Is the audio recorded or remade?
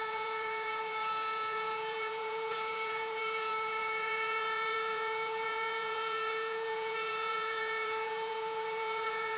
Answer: remade